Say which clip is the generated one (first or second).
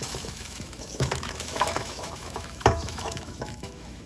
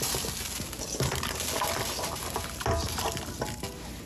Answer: first